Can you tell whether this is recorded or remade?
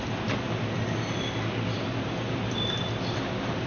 recorded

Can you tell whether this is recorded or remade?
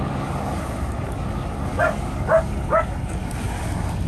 remade